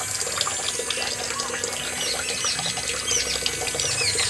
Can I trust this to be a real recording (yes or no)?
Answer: yes